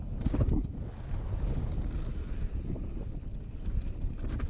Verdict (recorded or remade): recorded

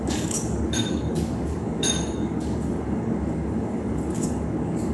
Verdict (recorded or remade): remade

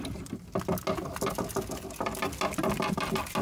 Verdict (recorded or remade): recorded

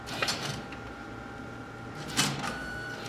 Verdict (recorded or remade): recorded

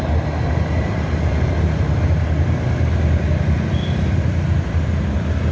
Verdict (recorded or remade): recorded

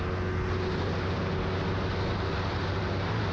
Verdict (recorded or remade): recorded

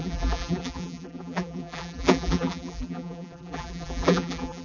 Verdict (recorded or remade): remade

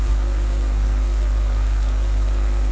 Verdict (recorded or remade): remade